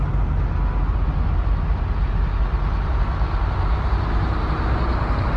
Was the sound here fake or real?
real